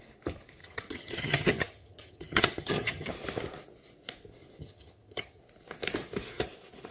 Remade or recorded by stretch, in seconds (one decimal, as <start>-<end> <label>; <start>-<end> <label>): 0.0-0.6 recorded; 0.6-3.1 remade; 3.1-4.6 recorded; 4.6-5.4 remade; 5.4-6.9 recorded